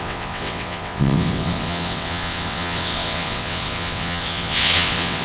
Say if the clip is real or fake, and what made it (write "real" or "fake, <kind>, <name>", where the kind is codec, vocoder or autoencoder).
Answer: fake, vocoder, WaveNeXt